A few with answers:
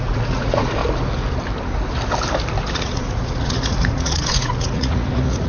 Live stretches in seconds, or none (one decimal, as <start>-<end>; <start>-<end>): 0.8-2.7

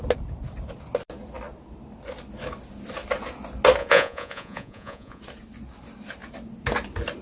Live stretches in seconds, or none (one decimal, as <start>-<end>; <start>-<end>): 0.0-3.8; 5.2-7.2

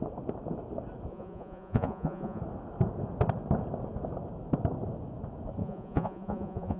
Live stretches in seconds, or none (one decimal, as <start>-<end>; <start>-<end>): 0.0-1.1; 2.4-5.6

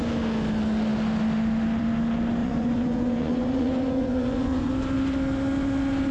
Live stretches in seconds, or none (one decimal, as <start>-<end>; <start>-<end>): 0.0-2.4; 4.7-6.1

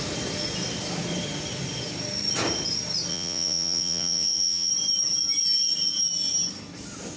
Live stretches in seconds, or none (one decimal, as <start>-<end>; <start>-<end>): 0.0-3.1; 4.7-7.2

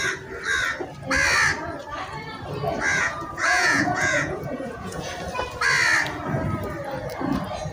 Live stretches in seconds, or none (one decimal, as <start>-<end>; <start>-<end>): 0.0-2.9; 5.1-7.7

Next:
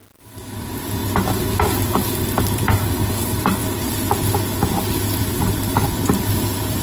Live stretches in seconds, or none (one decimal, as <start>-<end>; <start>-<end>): 0.0-6.8

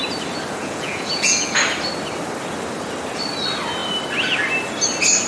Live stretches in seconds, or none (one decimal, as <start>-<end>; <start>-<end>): 0.0-0.6; 1.6-5.3